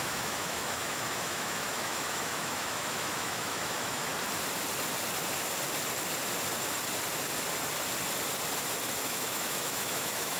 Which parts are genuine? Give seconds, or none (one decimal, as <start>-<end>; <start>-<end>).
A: 4.1-9.0

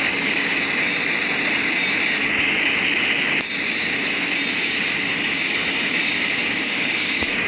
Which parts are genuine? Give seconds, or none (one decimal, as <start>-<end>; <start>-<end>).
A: 0.5-5.0

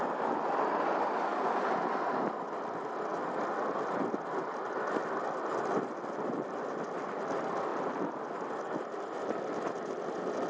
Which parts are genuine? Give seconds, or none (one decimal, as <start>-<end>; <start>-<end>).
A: 0.0-10.5

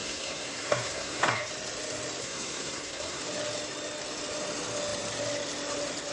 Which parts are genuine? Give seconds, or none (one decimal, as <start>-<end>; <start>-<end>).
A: 1.5-2.2; 3.2-6.1

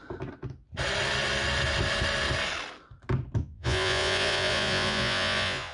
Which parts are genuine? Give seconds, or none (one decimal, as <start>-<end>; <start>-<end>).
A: 0.0-3.4